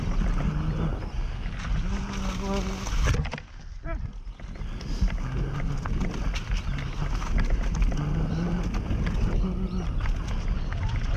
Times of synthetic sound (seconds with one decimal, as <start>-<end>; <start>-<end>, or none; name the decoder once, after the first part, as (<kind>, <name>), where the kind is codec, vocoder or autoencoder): none